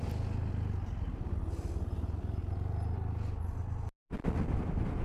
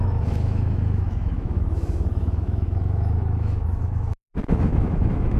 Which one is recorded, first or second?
first